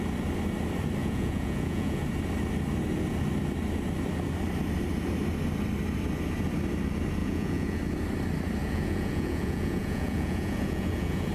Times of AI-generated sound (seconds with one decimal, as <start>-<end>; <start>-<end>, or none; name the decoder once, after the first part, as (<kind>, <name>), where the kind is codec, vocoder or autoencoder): 1.0-2.0 (vocoder, Vocos); 7.2-7.8; 8.6-11.3